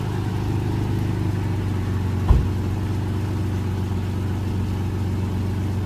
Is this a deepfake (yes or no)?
no